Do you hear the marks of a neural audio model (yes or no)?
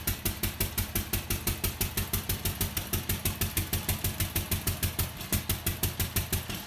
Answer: no